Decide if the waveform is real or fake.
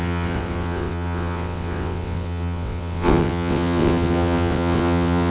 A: fake